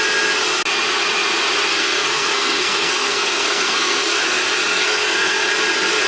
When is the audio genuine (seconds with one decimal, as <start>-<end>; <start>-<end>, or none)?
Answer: 0.0-1.7; 4.2-4.7; 5.5-6.1